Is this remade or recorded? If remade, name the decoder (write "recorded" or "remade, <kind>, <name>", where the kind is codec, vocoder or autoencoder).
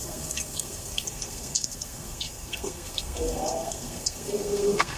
remade, codec, SNAC